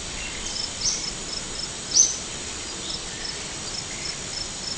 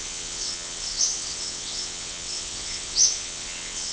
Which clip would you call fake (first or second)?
second